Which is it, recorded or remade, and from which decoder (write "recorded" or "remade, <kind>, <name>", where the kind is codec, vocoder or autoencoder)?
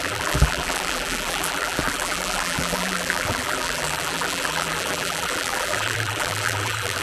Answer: remade, vocoder, BigVGAN v2